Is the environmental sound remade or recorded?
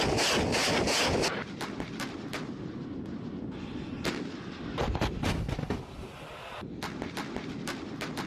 recorded